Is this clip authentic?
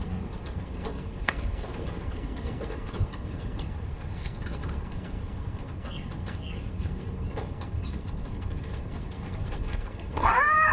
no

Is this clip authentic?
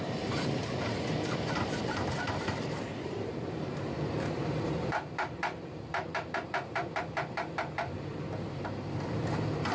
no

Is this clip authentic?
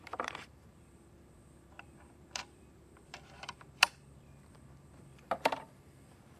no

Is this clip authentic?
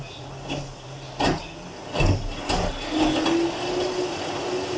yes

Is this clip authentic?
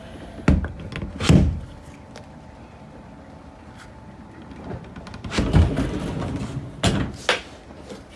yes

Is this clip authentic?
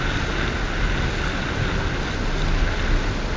yes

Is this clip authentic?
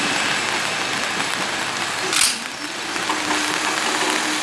yes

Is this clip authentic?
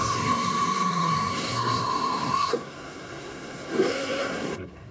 no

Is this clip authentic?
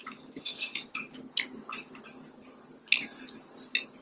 yes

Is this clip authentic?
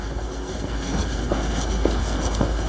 no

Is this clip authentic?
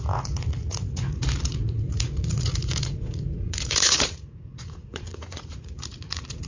no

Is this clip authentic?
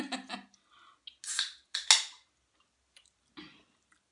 yes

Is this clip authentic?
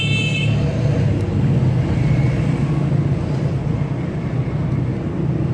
yes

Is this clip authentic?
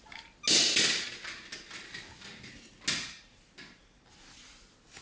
yes